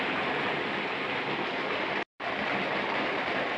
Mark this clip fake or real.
real